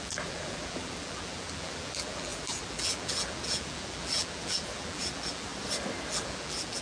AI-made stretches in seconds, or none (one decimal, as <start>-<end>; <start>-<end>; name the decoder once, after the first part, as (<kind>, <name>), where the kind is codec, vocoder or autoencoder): 0.0-5.5 (vocoder, BigVGAN v2); 6.1-6.8